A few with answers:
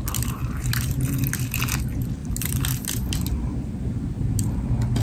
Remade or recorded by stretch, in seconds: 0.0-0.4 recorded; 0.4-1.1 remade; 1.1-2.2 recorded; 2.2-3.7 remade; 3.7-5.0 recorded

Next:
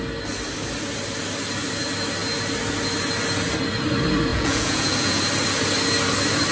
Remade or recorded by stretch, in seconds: 0.0-4.3 recorded; 4.3-5.2 remade; 5.2-6.5 recorded

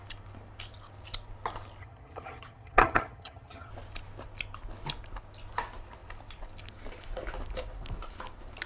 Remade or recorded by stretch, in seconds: 0.0-1.8 recorded; 1.8-3.7 remade; 3.7-8.7 recorded

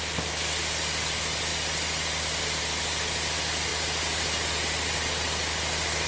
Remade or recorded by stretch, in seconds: 0.0-6.1 recorded

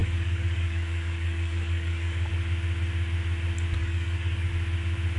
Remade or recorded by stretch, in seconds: 0.0-2.3 remade; 2.3-3.8 recorded; 3.8-4.5 remade; 4.5-5.2 recorded